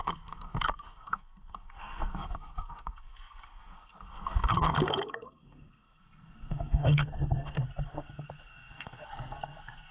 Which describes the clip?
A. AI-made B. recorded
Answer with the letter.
A